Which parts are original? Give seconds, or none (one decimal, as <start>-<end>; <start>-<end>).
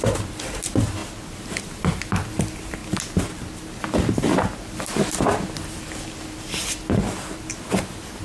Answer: 1.0-1.6; 2.8-7.7